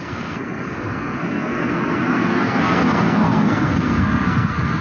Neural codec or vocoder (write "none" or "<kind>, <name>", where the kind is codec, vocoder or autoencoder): codec, SNAC